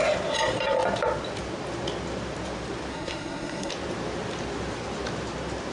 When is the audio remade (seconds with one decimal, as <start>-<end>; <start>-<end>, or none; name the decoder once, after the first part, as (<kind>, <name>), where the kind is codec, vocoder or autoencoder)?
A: 2.9-3.7 (codec, SNAC)